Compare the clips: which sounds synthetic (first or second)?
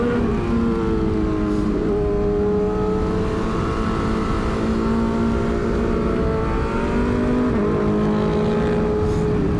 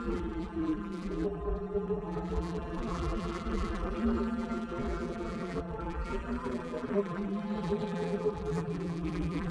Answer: second